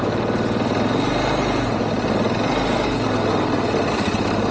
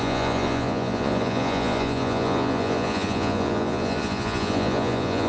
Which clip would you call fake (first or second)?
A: second